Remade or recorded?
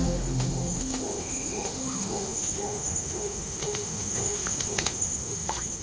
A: remade